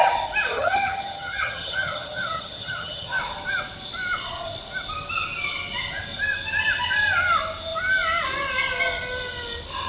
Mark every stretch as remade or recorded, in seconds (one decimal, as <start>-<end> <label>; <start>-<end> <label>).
0.0-0.5 recorded; 0.5-3.2 remade; 3.2-9.9 recorded